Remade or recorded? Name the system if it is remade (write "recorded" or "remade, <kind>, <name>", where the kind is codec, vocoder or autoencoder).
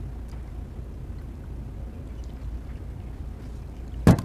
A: recorded